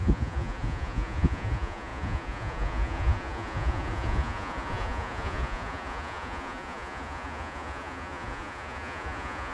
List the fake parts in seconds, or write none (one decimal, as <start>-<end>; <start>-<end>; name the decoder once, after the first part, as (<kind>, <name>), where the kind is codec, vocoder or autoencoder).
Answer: 0.0-9.5 (vocoder, Vocos)